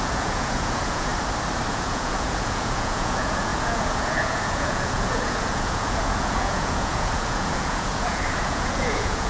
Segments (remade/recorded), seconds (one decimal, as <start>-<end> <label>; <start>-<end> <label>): 0.0-1.1 remade; 1.1-1.7 recorded; 1.7-9.3 remade